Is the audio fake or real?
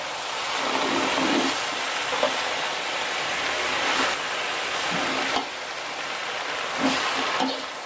real